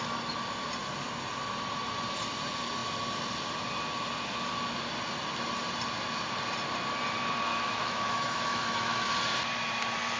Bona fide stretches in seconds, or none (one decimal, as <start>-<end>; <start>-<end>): 0.0-7.5; 9.1-10.2